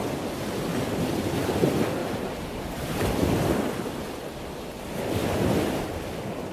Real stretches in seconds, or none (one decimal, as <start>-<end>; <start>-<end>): 0.0-2.0; 3.5-6.5